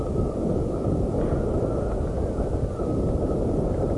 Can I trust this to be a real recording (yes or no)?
yes